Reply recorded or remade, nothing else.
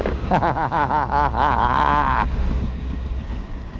remade